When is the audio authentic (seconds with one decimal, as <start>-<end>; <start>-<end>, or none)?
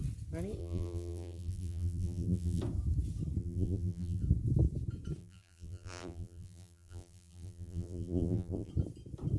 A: 0.0-0.6; 2.6-3.4; 4.2-5.2; 8.7-9.4